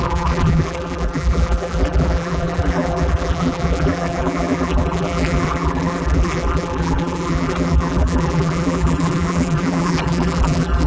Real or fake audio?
fake